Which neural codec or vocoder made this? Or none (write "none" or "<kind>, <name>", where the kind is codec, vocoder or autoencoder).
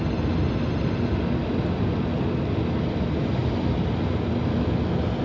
none